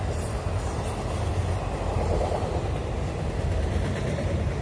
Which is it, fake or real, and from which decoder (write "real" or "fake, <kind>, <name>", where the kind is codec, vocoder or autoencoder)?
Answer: real